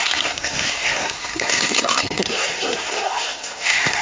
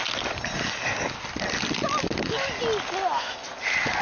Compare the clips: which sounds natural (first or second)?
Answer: second